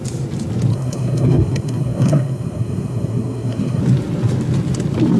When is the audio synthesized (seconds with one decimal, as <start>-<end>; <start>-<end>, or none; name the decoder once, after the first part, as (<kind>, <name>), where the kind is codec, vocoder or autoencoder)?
0.7-3.8 (codec, SNAC)